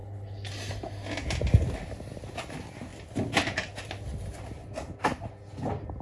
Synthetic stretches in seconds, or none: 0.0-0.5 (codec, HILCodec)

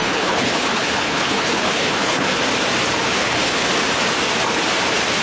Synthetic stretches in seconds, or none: 0.0-2.4 (codec, HILCodec); 3.1-3.7

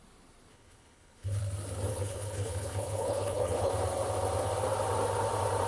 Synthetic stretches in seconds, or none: 0.5-1.4 (codec, HILCodec); 1.9-3.7